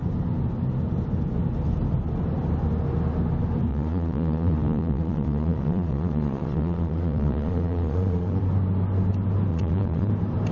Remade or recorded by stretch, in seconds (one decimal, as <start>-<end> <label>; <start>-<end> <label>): 0.0-3.7 recorded; 3.7-8.4 remade; 8.4-9.5 recorded; 9.5-10.1 remade; 10.1-10.5 recorded